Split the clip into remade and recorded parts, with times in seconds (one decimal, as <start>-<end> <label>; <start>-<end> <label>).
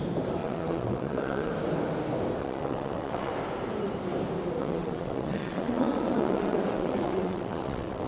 0.0-0.4 recorded; 0.4-1.5 remade; 1.5-2.4 recorded; 2.4-3.3 remade; 3.3-4.6 recorded; 4.6-8.1 remade